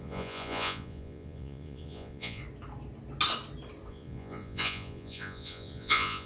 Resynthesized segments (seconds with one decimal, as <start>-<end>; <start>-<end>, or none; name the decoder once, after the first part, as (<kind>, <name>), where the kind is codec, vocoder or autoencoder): 0.0-2.4 (vocoder, Vocos); 3.9-6.3